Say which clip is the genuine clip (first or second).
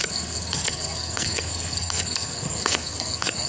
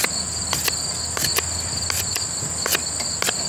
second